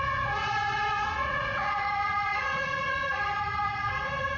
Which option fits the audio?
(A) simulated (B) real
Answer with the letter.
A